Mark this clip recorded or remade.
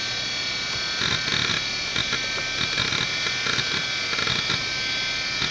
recorded